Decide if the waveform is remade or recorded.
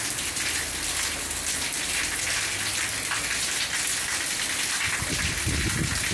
recorded